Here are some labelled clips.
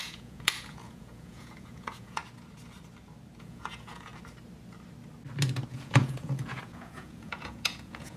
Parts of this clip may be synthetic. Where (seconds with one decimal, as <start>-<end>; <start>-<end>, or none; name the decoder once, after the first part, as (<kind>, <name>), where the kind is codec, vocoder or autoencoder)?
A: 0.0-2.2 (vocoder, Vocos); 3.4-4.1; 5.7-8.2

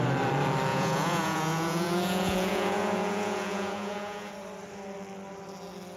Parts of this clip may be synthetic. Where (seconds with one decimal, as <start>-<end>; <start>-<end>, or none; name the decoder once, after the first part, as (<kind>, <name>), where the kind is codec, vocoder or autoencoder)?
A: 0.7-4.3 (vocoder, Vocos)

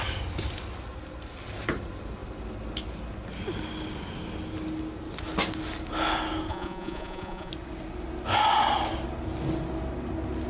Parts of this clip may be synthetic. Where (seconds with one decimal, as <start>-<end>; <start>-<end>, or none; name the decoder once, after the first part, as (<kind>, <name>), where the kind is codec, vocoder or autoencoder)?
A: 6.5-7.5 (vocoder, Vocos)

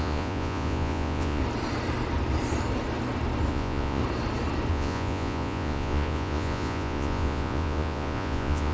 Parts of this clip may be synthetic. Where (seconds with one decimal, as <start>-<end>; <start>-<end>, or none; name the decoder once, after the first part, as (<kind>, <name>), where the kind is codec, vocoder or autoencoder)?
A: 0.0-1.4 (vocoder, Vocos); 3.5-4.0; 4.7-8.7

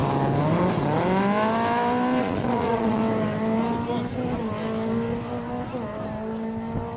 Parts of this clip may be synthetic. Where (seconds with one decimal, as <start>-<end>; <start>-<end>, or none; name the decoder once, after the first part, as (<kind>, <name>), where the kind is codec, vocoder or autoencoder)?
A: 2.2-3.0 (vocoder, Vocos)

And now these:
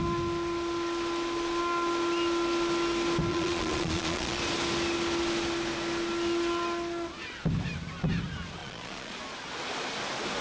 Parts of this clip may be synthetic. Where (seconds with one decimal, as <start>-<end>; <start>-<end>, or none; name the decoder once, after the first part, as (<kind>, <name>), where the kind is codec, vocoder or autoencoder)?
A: 3.3-4.4 (vocoder, Vocos); 8.6-9.2